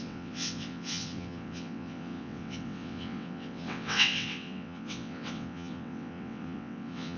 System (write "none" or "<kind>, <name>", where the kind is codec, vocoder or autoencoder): vocoder, WaveNeXt